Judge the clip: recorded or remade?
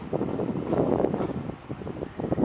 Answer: recorded